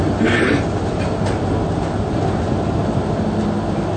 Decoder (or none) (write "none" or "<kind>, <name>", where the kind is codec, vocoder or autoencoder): none